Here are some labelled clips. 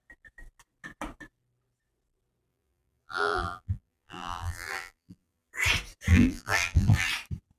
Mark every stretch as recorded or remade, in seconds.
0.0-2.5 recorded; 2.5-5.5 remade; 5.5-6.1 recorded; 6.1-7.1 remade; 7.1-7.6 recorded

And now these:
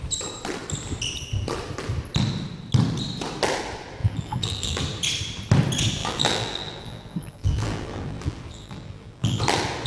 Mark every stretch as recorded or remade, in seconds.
0.0-4.0 recorded; 4.0-4.8 remade; 4.8-6.0 recorded; 6.0-9.4 remade; 9.4-9.9 recorded

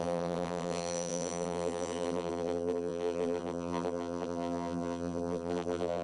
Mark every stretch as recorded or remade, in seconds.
0.0-6.0 remade

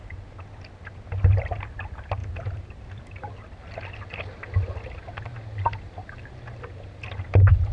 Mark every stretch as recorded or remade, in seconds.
0.0-2.2 recorded; 2.2-3.0 remade; 3.0-7.7 recorded